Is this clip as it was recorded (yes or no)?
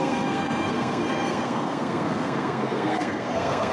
no